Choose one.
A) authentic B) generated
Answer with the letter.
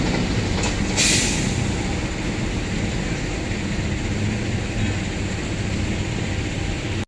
A